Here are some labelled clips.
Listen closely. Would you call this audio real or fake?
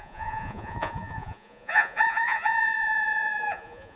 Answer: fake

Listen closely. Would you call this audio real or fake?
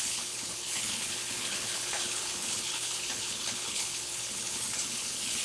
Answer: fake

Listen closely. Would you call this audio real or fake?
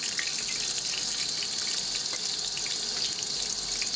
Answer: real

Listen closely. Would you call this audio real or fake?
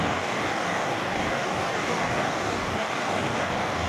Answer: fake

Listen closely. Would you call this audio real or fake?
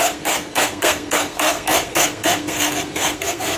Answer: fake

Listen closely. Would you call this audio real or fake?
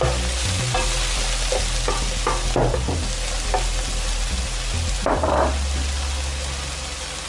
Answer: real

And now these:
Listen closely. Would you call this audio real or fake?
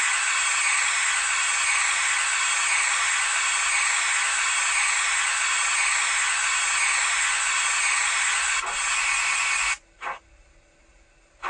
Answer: real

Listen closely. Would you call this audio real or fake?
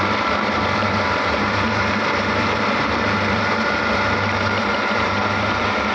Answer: fake